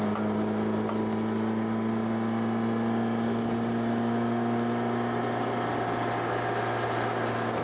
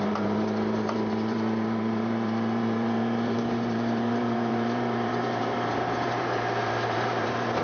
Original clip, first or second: first